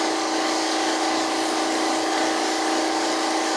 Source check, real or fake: fake